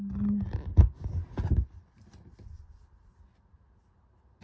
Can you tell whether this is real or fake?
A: real